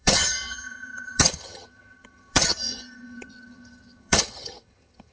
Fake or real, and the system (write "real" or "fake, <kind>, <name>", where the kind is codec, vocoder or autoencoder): fake, vocoder, HiFi-GAN